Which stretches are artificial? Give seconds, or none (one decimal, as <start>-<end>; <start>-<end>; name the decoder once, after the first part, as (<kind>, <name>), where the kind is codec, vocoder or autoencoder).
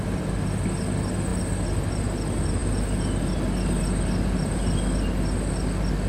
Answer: none